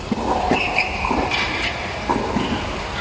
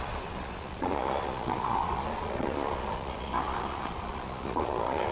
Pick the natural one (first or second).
first